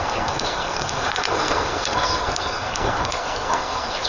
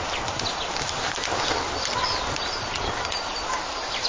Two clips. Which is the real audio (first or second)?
second